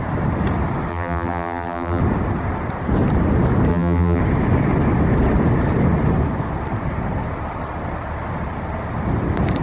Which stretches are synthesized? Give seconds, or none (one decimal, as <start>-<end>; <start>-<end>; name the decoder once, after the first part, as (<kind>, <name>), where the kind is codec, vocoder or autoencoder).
0.9-2.0 (vocoder, BigVGAN v2); 3.7-4.2